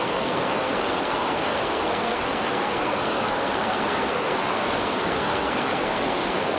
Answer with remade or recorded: remade